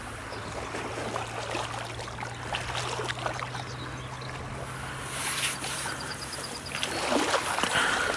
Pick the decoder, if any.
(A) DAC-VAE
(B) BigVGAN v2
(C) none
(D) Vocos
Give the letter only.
C